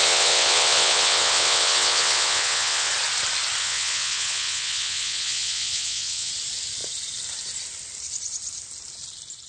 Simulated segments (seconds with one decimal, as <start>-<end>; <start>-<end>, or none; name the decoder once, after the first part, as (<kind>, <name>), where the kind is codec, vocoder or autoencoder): 0.0-2.9 (vocoder, WaveNeXt); 3.6-6.3